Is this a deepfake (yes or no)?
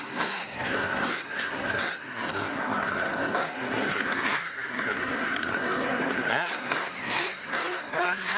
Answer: yes